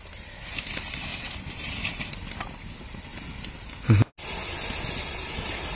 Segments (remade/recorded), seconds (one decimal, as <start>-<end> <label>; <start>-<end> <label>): 0.0-1.1 recorded; 1.1-2.0 remade; 2.0-5.8 recorded

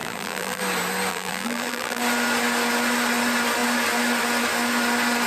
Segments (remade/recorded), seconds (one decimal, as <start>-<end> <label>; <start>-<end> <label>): 0.0-0.6 remade; 0.6-1.1 recorded; 1.1-2.0 remade; 2.0-5.3 recorded

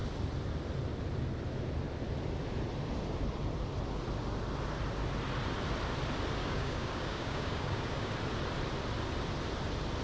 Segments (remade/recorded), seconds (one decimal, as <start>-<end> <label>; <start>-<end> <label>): 0.0-6.4 recorded; 6.4-8.1 remade; 8.1-10.0 recorded